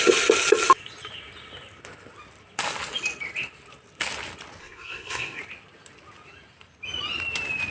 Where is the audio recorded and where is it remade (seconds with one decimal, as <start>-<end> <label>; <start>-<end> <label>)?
0.0-4.6 recorded; 4.6-5.4 remade; 5.4-7.7 recorded